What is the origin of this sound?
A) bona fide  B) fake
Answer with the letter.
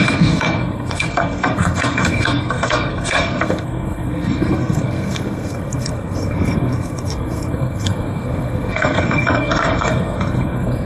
B